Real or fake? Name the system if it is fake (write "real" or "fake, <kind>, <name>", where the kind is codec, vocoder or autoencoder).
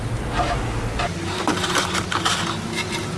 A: real